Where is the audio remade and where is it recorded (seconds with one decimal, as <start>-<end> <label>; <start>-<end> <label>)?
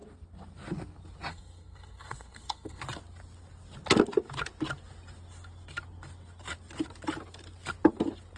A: 0.0-1.3 recorded; 1.3-2.8 remade; 2.8-8.4 recorded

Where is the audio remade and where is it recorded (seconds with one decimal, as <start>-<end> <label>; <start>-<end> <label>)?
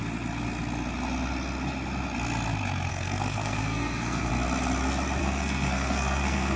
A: 0.0-2.9 recorded; 2.9-4.3 remade; 4.3-5.2 recorded; 5.2-6.6 remade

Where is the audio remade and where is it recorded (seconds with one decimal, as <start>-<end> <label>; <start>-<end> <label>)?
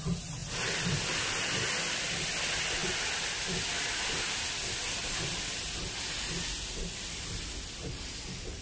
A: 0.0-8.6 recorded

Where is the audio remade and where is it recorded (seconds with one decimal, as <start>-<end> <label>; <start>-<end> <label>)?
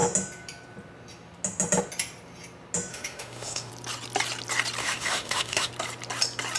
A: 0.0-2.9 recorded; 2.9-3.7 remade; 3.7-4.8 recorded; 4.8-5.7 remade; 5.7-6.6 recorded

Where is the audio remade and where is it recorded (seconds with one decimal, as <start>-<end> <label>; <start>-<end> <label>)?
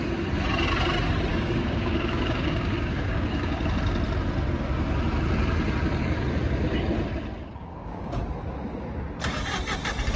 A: 0.0-1.3 recorded; 1.3-3.6 remade; 3.6-7.6 recorded; 7.6-8.2 remade; 8.2-10.2 recorded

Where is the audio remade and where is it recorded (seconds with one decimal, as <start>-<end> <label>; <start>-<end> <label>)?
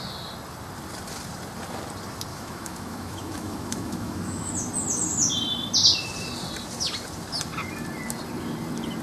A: 0.0-2.3 recorded; 2.3-4.5 remade; 4.5-9.0 recorded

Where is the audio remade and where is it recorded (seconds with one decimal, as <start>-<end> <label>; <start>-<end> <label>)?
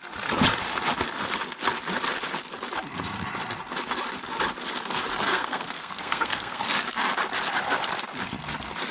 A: 0.0-5.3 recorded; 5.3-6.6 remade; 6.6-8.9 recorded